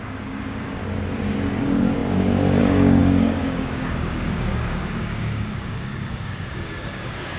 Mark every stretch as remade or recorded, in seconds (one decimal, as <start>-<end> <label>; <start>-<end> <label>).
0.0-0.8 remade; 0.8-1.6 recorded; 1.6-7.4 remade